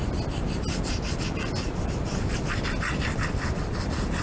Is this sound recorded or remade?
recorded